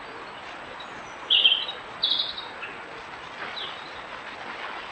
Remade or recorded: recorded